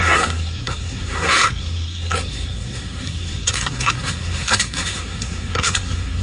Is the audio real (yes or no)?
no